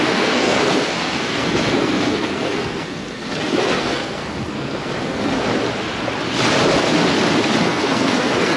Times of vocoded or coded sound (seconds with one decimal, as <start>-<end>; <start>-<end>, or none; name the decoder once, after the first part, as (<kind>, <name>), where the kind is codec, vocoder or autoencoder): 0.0-5.5 (codec, SNAC); 7.6-8.6